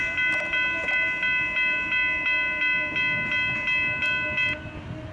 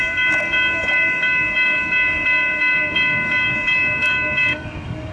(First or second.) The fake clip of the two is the second